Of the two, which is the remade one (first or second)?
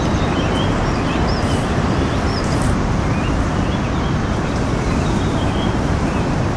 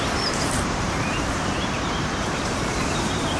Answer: second